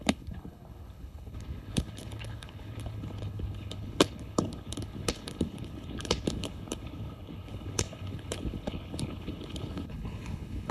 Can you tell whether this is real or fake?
fake